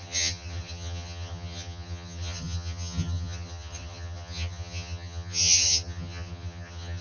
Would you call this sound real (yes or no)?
no